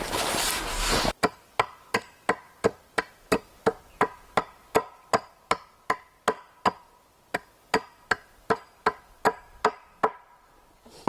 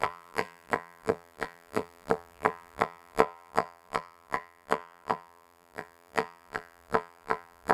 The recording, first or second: first